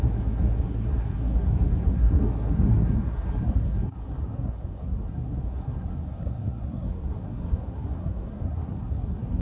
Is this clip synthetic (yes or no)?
yes